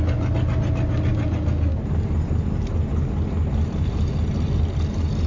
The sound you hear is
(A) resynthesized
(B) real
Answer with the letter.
B